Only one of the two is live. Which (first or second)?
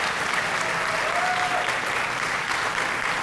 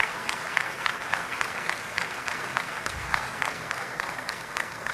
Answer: first